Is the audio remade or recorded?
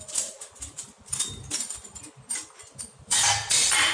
remade